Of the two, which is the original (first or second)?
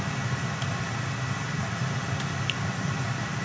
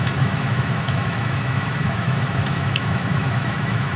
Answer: first